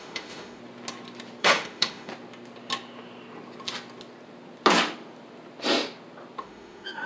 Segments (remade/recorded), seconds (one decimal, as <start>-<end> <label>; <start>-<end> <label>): 0.0-0.6 remade; 0.6-1.4 recorded; 1.4-2.1 remade; 2.1-6.4 recorded; 6.4-7.1 remade